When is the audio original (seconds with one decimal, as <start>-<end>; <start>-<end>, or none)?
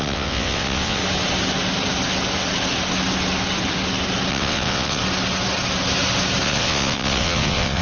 1.0-4.3; 5.0-6.4